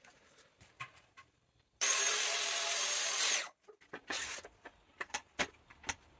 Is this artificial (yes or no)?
yes